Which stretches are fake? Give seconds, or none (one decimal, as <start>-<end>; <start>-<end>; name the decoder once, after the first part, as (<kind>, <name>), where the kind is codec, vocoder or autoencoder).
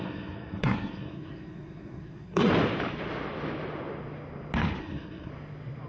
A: 0.0-2.5 (codec, SNAC); 4.8-5.3